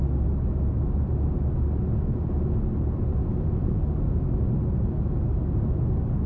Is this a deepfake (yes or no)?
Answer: no